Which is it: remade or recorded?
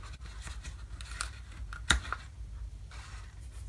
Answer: recorded